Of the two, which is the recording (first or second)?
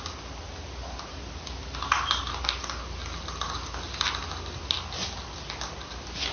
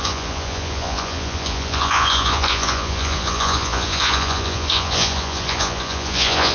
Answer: first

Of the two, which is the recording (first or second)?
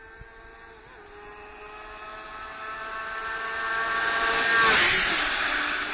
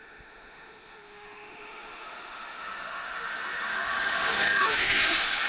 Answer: first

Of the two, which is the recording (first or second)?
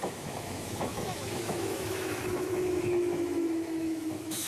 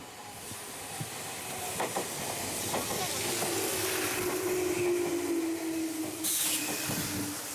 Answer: second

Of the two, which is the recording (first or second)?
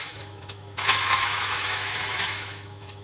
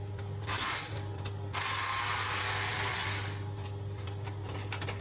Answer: second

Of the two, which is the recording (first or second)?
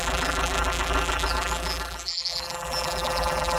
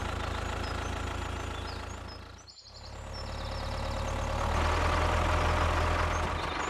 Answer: second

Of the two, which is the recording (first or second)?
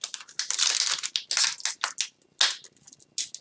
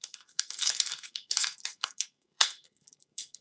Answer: first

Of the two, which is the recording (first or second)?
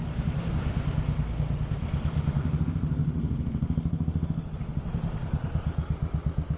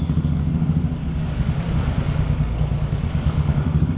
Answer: first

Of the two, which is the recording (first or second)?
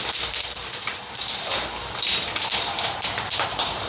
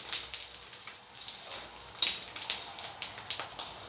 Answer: second